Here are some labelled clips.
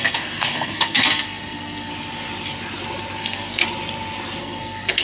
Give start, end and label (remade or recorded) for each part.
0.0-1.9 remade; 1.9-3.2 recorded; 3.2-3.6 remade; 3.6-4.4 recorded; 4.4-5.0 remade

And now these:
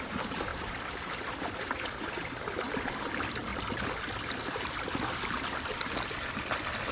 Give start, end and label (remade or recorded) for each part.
0.0-0.5 remade; 0.5-1.5 recorded; 1.5-3.5 remade; 3.5-4.4 recorded; 4.4-6.9 remade

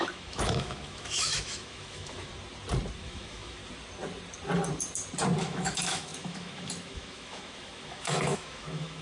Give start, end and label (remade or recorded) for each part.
0.0-2.3 remade; 2.3-3.0 recorded; 3.0-3.6 remade; 3.6-5.4 recorded; 5.4-9.0 remade

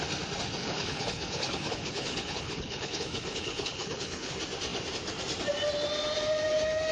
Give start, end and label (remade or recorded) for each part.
0.0-0.6 recorded; 0.6-4.3 remade; 4.3-6.9 recorded

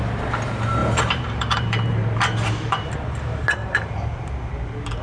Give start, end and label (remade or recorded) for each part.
0.0-0.8 recorded; 0.8-2.9 remade; 2.9-3.6 recorded; 3.6-4.3 remade; 4.3-5.0 recorded

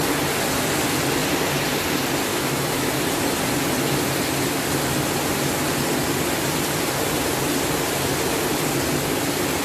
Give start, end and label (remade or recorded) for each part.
0.0-2.3 recorded; 2.3-2.9 remade; 2.9-9.6 recorded